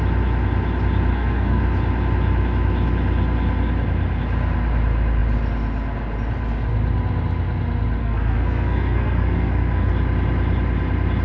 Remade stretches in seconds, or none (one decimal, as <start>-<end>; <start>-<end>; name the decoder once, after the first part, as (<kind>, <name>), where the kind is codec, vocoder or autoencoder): 1.1-1.6 (codec, SNAC); 8.0-9.9